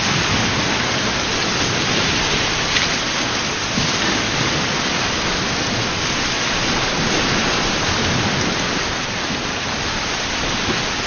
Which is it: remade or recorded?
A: recorded